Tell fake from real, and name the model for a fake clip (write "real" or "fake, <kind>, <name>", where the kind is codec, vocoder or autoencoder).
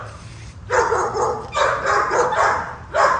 fake, vocoder, BigVGAN v2